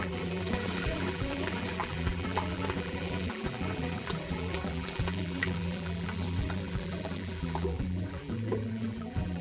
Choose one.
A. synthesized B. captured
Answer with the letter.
A